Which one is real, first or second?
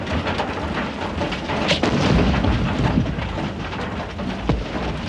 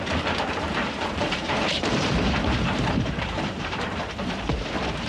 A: first